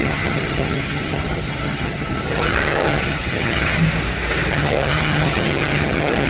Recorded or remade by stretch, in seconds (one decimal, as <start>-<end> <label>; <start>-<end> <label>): 0.0-3.8 remade; 3.8-4.5 recorded; 4.5-6.3 remade